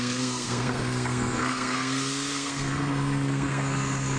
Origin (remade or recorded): remade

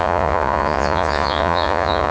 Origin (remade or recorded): remade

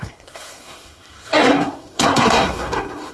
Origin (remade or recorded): remade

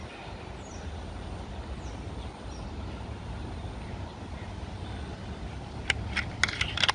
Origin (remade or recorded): recorded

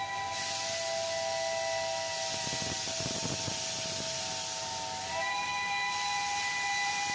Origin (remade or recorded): recorded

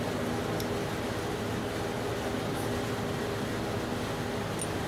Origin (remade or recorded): recorded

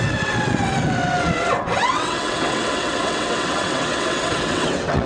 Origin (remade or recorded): remade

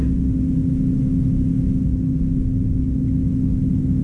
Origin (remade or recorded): recorded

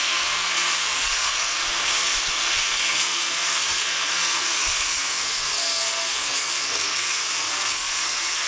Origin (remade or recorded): remade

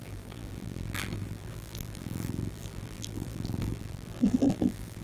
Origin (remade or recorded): remade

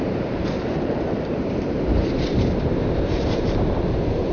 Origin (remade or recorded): remade